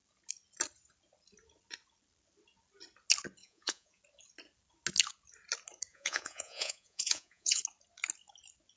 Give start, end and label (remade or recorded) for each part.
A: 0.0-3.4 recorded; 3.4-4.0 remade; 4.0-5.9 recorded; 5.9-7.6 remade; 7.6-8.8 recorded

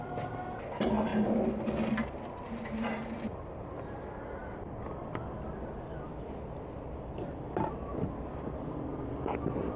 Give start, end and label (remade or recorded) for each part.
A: 0.0-9.8 recorded

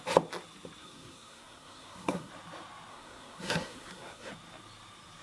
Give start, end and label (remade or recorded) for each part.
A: 0.0-0.8 recorded; 0.8-2.3 remade; 2.3-2.9 recorded; 2.9-4.3 remade; 4.3-5.2 recorded

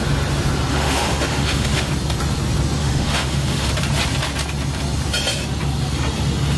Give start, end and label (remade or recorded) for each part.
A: 0.0-0.7 recorded; 0.7-1.9 remade; 1.9-2.8 recorded; 2.8-3.7 remade; 3.7-6.6 recorded

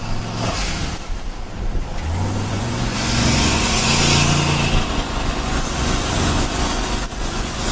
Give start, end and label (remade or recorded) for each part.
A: 0.0-2.5 recorded; 2.5-3.9 remade; 3.9-4.9 recorded; 4.9-7.7 remade